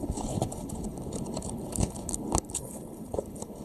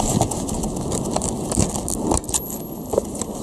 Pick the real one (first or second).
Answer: second